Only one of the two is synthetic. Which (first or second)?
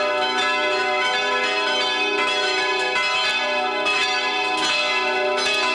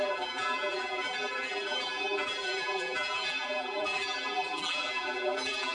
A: second